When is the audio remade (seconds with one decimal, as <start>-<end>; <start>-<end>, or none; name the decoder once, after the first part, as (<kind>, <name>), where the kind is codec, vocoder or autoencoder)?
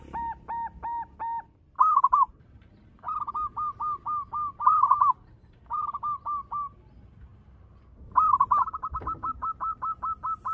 none